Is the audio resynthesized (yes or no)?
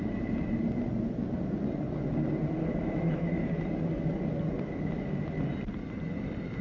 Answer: no